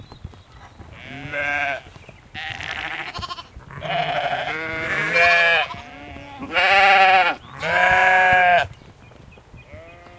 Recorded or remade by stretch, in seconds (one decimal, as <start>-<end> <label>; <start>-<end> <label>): 0.0-10.2 recorded